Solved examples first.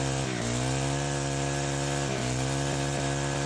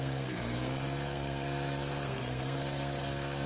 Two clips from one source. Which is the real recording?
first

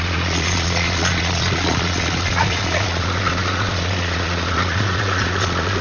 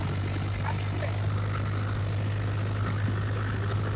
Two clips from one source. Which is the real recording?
second